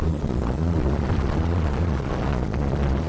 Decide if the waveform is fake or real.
fake